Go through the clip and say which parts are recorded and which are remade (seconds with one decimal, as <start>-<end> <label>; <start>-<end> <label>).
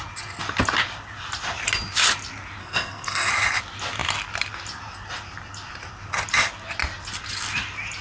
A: 0.0-2.6 recorded; 2.6-3.3 remade; 3.3-8.0 recorded